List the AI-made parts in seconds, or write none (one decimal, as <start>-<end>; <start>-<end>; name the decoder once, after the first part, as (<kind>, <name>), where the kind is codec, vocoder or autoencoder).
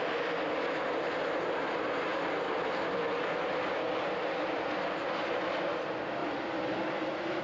6.2-7.4 (vocoder, BigVGAN v2)